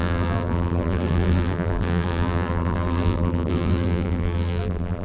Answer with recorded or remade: remade